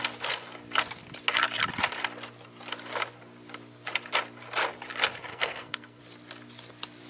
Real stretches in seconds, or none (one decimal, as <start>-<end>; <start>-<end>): 0.0-5.3; 6.0-7.1